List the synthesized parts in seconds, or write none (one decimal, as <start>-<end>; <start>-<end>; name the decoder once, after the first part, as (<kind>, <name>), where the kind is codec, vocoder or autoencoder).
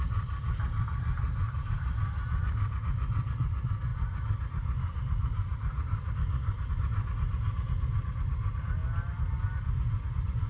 1.4-1.9 (vocoder, BigVGAN v2); 3.9-6.7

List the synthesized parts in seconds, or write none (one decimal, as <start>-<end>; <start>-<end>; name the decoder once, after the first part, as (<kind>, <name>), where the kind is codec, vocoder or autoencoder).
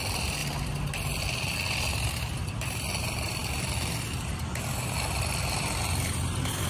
0.0-0.4 (vocoder, BigVGAN v2); 2.1-6.7